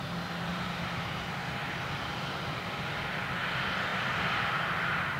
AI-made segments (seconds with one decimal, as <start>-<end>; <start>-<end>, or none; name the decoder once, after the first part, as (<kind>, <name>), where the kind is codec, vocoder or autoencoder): 0.5-3.2 (vocoder, BigVGAN v2); 3.9-4.5